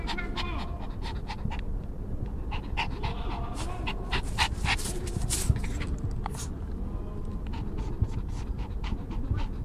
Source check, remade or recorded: recorded